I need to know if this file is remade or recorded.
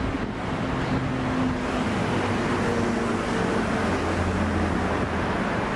recorded